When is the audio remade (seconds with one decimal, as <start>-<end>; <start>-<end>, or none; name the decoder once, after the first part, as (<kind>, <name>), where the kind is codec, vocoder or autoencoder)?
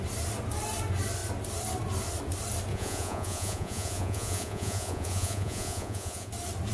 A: 2.7-6.3 (vocoder, Vocos)